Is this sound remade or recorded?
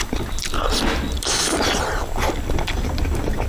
remade